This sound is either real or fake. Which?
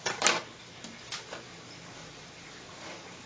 real